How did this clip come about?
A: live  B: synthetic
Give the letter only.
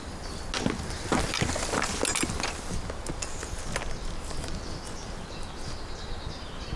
A